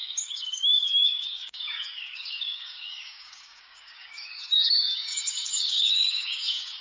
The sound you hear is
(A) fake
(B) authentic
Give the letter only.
A